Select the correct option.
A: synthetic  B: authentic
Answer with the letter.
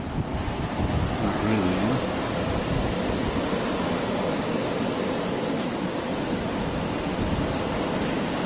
B